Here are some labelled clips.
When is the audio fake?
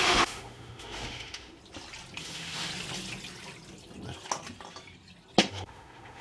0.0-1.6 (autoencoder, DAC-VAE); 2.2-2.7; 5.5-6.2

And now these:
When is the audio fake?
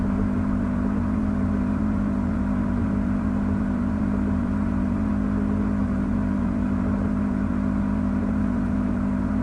0.0-5.1 (vocoder, BigVGAN v2); 5.8-9.4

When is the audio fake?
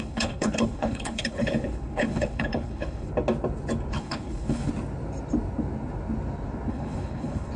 0.0-3.1 (codec, HILCodec); 3.9-4.7; 6.7-7.6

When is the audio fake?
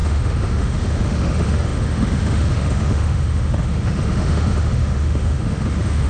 0.0-6.1 (autoencoder, DAC-VAE)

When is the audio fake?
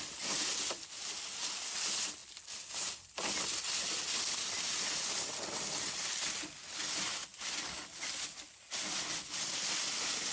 none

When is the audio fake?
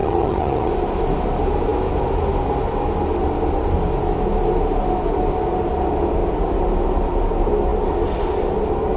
0.0-0.7 (vocoder, HiFi-GAN)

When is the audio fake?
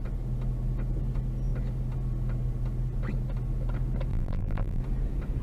4.1-4.8 (vocoder, BigVGAN v2)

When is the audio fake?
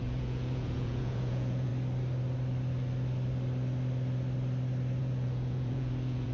0.0-1.7 (vocoder, Vocos); 5.0-6.3